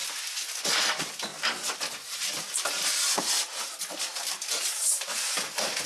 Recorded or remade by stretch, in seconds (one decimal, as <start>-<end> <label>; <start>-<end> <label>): 0.0-5.9 recorded